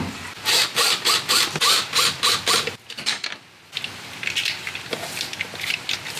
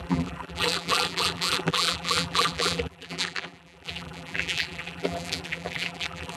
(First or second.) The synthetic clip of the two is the second